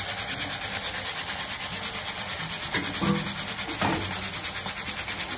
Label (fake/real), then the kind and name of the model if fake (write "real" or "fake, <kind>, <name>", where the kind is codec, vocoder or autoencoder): real